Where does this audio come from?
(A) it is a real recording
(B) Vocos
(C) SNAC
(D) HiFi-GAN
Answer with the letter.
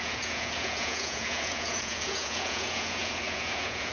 B